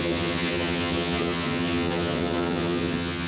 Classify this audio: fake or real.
fake